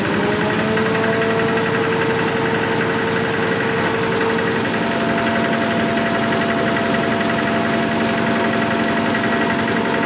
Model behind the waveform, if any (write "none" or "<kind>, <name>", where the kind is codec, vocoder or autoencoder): none